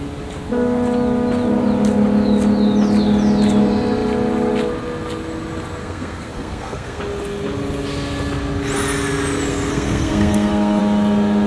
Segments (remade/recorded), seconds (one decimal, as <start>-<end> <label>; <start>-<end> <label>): 0.0-5.8 recorded; 5.8-7.0 remade; 7.0-9.5 recorded; 9.5-10.8 remade; 10.8-11.5 recorded